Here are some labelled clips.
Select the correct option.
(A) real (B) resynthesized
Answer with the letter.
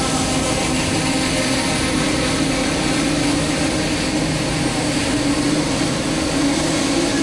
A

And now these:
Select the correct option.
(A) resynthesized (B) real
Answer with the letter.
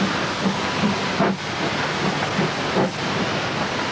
B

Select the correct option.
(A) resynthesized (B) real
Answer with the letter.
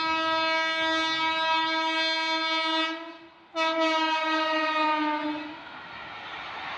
B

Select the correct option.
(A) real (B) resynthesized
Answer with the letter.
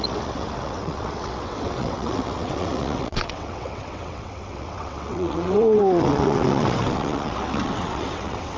B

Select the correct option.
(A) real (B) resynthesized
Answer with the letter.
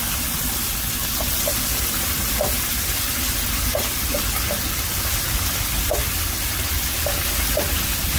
A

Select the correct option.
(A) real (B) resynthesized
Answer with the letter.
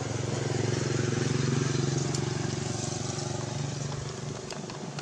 A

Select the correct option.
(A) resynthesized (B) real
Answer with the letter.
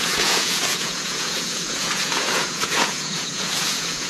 A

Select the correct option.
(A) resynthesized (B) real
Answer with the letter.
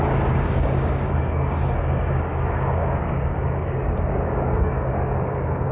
A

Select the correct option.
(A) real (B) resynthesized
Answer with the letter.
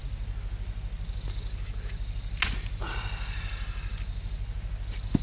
A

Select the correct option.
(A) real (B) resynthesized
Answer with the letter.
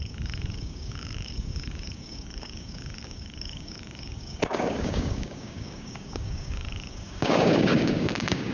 B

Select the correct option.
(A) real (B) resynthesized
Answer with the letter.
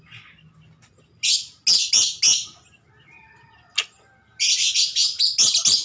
A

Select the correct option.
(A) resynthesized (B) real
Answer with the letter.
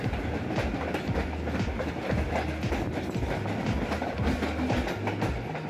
B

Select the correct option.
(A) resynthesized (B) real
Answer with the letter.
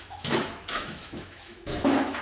A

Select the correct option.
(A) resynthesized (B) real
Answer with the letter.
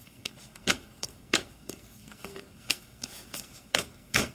A